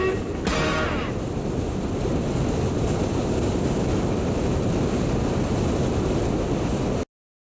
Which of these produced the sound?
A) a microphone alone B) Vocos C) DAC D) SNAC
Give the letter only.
A